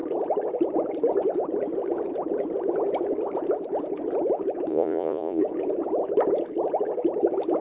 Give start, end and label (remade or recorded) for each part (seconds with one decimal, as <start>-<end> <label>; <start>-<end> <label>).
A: 0.0-4.7 recorded; 4.7-5.4 remade; 5.4-7.6 recorded